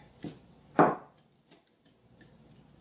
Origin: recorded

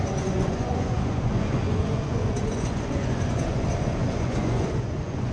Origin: remade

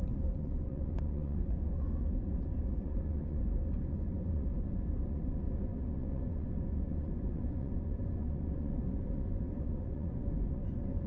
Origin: remade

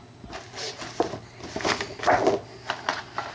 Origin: recorded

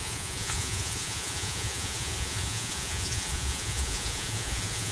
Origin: remade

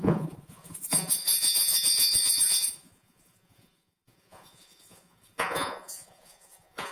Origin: remade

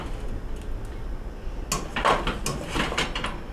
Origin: recorded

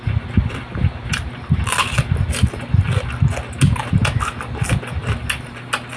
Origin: recorded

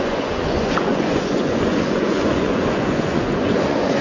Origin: remade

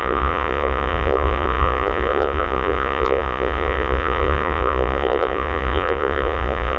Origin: remade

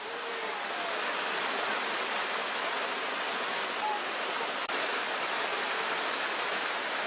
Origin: recorded